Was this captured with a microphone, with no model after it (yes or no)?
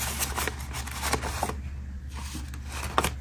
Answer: yes